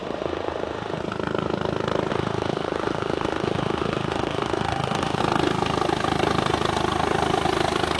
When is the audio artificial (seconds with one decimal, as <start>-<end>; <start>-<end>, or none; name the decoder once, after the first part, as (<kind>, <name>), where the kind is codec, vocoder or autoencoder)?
0.0-1.0 (autoencoder, DAC-VAE); 2.1-5.2